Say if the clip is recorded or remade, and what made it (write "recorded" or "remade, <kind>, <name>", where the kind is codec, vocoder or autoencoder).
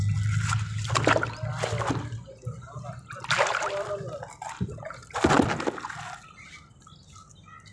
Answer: recorded